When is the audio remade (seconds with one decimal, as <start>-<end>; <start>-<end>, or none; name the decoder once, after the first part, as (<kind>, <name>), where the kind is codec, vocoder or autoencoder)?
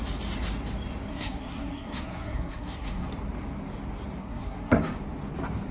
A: 1.1-3.1 (codec, SNAC); 4.2-4.8